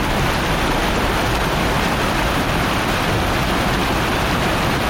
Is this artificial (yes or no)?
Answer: no